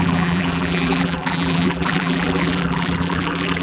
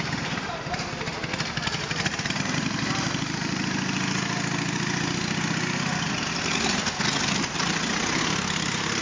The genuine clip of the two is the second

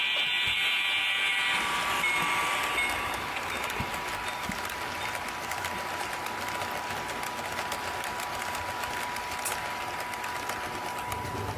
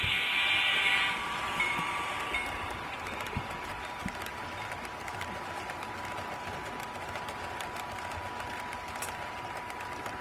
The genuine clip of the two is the first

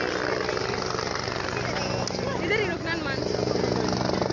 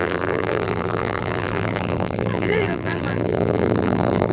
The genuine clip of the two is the first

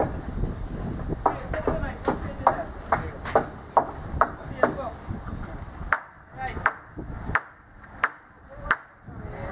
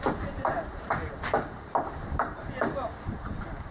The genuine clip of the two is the first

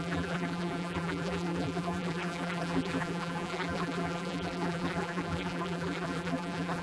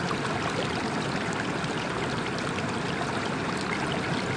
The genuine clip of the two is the second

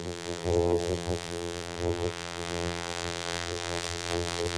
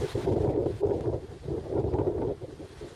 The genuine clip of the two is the second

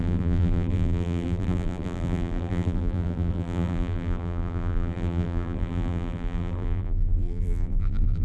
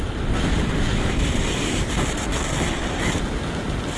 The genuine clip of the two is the second